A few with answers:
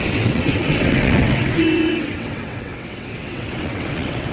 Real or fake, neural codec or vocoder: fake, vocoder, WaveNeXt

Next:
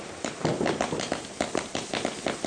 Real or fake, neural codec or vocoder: real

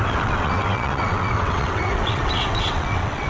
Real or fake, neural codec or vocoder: fake, vocoder, WaveNeXt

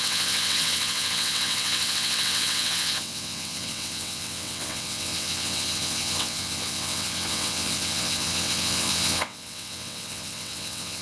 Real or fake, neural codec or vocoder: fake, vocoder, WaveNeXt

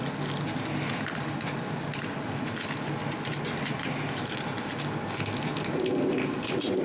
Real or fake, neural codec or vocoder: real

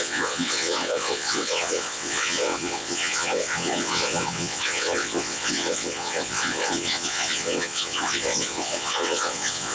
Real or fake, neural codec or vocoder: fake, vocoder, WaveNeXt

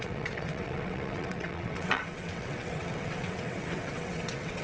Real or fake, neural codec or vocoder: fake, vocoder, WaveNeXt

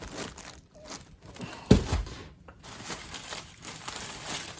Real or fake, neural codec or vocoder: real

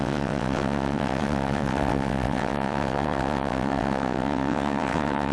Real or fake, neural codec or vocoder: fake, vocoder, WaveNeXt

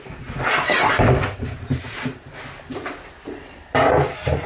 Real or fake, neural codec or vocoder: real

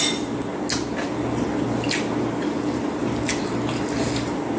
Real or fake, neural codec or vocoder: real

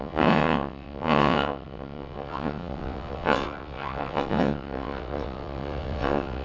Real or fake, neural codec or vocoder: fake, vocoder, WaveNeXt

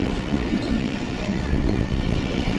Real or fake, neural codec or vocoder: fake, vocoder, WaveNeXt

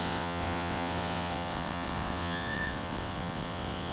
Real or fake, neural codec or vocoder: fake, vocoder, WaveNeXt